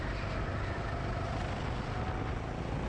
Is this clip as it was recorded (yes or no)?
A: yes